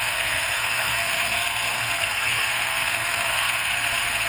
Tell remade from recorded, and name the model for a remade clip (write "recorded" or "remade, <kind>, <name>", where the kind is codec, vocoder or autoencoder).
remade, codec, SNAC